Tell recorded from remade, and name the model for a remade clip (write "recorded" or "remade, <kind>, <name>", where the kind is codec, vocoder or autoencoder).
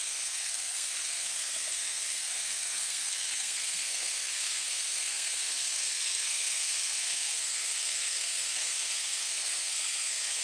remade, codec, SNAC